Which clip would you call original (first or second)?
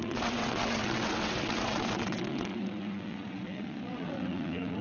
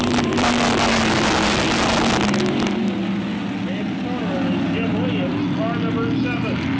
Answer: second